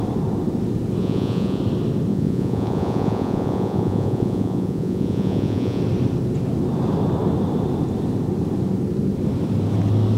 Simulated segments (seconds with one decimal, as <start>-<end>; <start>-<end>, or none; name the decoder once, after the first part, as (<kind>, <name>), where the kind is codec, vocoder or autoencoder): 1.0-1.6 (vocoder, Vocos); 2.1-5.8

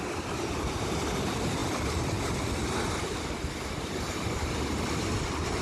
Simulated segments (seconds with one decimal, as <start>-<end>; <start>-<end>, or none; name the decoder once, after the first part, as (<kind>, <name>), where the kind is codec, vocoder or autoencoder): none

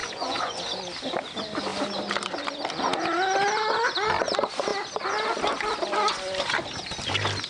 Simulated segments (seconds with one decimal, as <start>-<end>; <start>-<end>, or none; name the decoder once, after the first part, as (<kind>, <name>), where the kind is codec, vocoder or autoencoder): 0.0-0.6 (vocoder, Vocos)